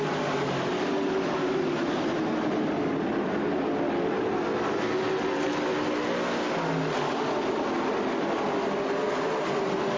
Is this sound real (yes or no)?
yes